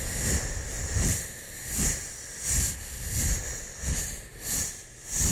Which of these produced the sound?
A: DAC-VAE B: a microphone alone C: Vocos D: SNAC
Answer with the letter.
B